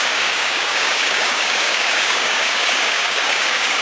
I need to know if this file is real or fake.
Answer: fake